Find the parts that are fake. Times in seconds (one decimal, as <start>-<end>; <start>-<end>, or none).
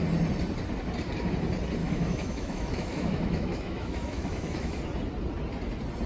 1.8-4.8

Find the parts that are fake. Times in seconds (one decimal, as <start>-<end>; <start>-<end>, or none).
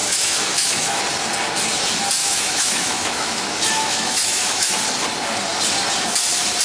0.0-1.0; 2.2-4.7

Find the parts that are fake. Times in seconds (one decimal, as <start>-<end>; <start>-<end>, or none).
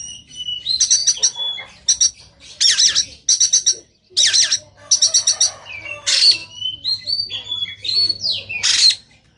none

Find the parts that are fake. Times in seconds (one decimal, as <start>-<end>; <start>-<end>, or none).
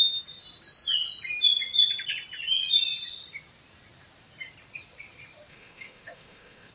5.5-6.7